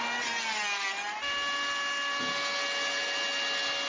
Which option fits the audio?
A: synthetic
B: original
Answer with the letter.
B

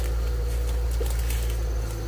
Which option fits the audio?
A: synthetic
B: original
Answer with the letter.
B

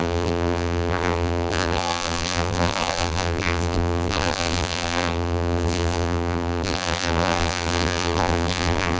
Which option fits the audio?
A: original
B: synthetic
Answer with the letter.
B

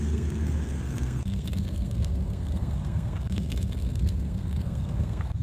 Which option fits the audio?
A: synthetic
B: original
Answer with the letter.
A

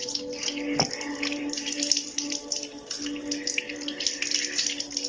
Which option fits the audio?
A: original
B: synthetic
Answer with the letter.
A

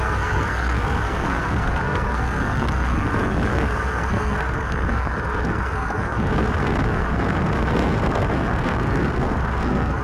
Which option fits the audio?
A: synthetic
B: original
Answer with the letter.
A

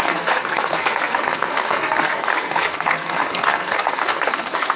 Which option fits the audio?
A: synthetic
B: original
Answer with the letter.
A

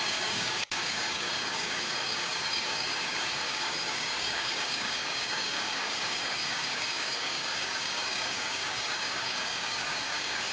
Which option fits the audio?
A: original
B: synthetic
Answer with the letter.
B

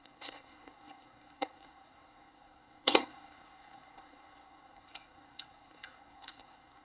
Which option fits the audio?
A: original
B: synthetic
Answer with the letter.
B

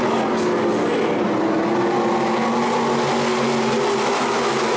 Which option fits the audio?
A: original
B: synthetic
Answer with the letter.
A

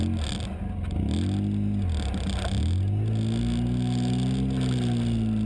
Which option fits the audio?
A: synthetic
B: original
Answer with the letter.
B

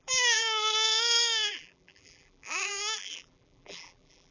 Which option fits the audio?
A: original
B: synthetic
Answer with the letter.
B